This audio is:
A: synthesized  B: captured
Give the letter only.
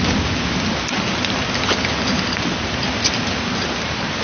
B